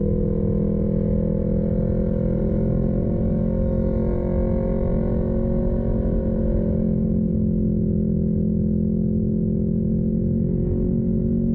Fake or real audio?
real